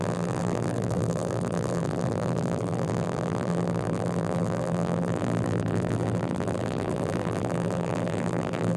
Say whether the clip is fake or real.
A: fake